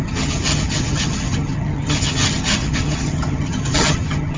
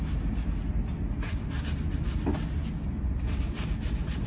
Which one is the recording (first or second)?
second